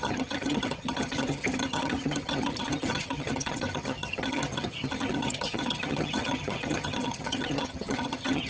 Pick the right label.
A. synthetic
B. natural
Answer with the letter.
A